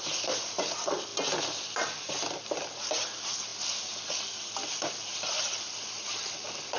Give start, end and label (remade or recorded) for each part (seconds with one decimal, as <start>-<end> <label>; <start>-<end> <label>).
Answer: 0.0-6.8 recorded